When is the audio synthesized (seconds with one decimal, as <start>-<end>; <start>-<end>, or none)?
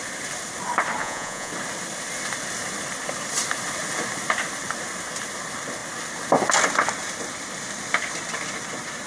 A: 1.0-1.5